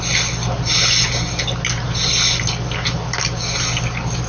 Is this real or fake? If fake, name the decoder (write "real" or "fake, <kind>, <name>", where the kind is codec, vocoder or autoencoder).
real